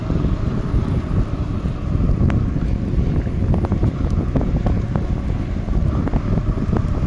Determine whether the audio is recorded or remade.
recorded